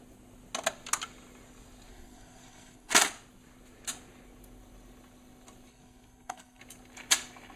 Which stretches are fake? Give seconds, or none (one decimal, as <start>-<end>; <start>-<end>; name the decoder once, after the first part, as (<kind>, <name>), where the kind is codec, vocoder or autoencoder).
1.9-2.9 (codec, SNAC); 5.7-6.6